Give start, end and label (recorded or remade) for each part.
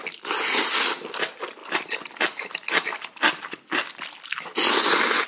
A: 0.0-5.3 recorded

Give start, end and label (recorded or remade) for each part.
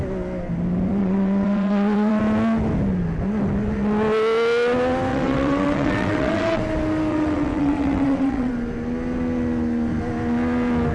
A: 0.0-1.0 recorded; 1.0-2.2 remade; 2.2-5.1 recorded; 5.1-6.6 remade; 6.6-7.1 recorded; 7.1-8.5 remade; 8.5-10.9 recorded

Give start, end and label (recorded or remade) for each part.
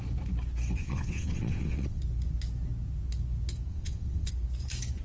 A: 0.0-0.8 recorded; 0.8-2.0 remade; 2.0-3.7 recorded; 3.7-4.3 remade; 4.3-5.0 recorded